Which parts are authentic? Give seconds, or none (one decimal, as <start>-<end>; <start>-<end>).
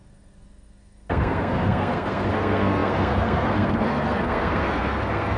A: none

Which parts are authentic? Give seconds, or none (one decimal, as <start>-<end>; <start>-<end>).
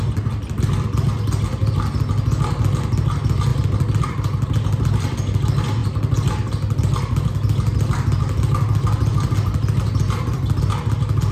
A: 0.0-11.3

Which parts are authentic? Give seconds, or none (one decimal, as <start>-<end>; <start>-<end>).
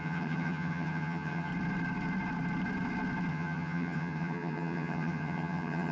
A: 1.5-3.3